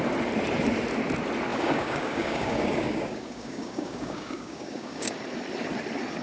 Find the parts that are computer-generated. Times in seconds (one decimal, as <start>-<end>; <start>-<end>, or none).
1.5-5.1